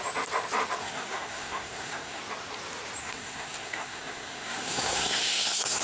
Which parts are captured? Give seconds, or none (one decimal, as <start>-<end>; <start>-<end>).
0.0-0.8; 2.2-3.0